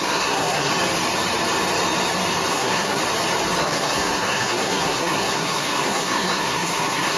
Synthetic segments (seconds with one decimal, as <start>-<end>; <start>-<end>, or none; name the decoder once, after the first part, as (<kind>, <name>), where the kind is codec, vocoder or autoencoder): 0.0-0.7 (codec, SNAC); 2.5-3.0; 3.6-7.2